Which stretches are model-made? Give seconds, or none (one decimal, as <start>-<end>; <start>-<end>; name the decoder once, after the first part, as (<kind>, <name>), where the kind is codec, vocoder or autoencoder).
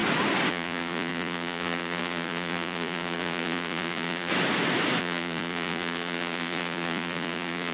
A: 0.5-4.3 (vocoder, Vocos); 5.0-7.7